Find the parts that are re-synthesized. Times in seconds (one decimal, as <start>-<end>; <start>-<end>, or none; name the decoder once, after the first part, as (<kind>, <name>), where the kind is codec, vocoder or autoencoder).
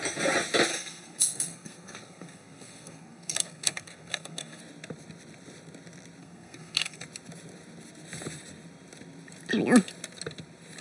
0.7-4.6 (codec, SNAC); 6.2-7.0